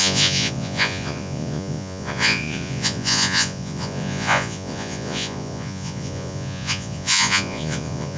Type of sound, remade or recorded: remade